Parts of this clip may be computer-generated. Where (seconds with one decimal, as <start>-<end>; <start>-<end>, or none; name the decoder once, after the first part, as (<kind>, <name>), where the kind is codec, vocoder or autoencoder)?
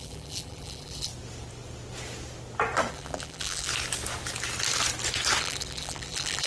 0.0-1.1 (vocoder, BigVGAN v2); 2.9-3.7; 5.4-6.5